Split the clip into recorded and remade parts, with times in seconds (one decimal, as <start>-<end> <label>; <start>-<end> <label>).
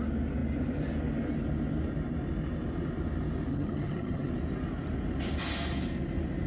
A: 0.0-3.5 recorded; 3.5-4.3 remade; 4.3-6.5 recorded